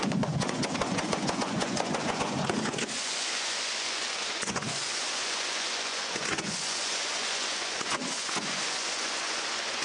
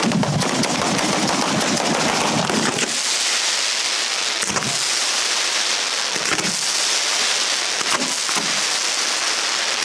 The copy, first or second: first